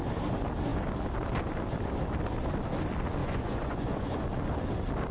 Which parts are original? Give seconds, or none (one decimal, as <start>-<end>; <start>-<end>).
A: 0.0-3.2; 4.2-5.1